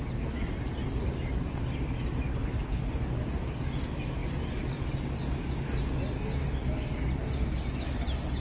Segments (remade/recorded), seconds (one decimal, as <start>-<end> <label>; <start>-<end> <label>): 0.0-2.3 recorded; 2.3-2.9 remade; 2.9-8.4 recorded